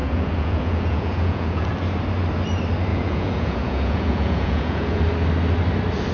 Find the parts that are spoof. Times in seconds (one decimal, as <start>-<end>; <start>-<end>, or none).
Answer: 0.0-1.7; 2.9-5.0